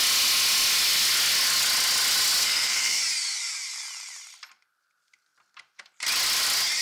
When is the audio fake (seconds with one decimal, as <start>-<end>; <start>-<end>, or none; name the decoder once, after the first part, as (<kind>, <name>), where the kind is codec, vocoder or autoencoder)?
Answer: 2.4-3.0 (codec, SNAC)